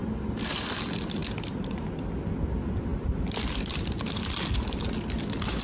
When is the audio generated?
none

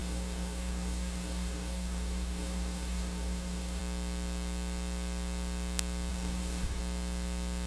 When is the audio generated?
0.0-3.8 (codec, DAC); 6.1-6.8

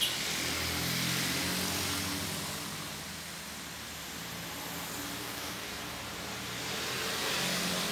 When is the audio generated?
5.2-5.8 (codec, DAC)

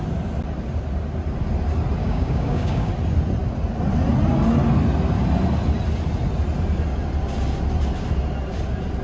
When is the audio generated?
2.0-2.9 (codec, DAC)

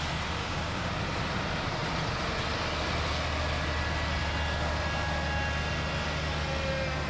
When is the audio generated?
0.4-0.9 (codec, DAC)

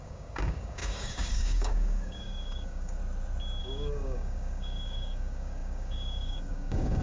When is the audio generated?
0.0-3.0 (codec, DAC); 3.6-7.0

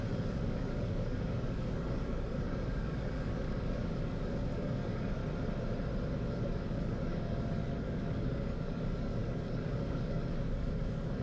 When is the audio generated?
0.0-5.2 (codec, DAC); 6.3-11.2

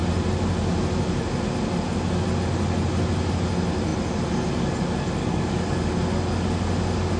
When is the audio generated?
5.2-5.9 (codec, DAC)